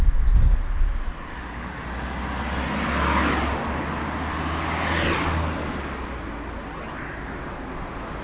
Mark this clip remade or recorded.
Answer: recorded